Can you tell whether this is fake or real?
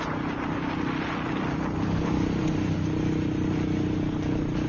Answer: real